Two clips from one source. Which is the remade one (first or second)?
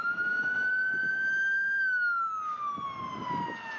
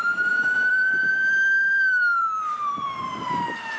second